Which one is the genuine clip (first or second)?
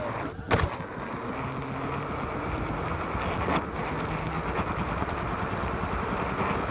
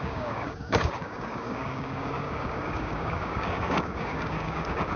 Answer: first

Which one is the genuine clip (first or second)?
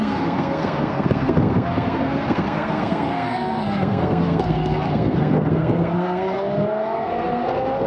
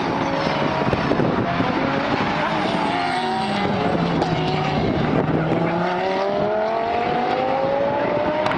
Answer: second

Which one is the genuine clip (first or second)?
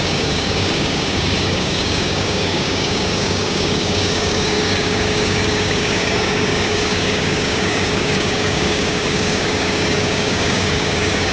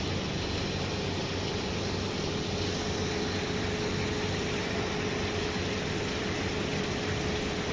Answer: second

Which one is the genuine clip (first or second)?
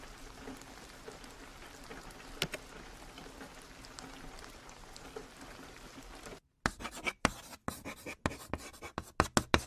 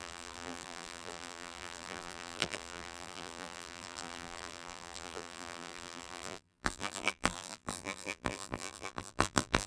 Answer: first